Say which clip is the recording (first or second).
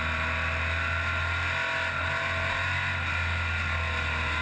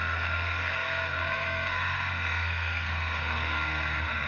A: first